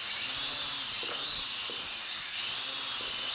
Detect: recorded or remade recorded